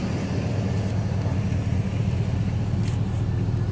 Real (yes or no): yes